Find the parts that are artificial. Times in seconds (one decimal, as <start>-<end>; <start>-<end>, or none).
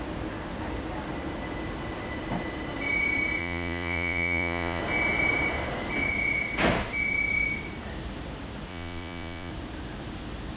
3.4-4.8; 8.7-9.5